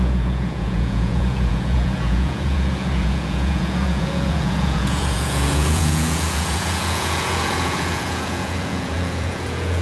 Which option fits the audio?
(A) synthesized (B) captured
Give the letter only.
A